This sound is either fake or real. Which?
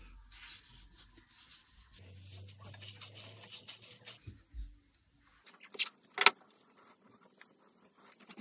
real